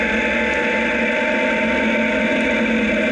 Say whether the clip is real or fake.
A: real